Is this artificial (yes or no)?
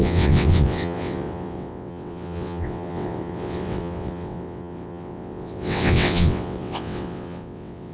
yes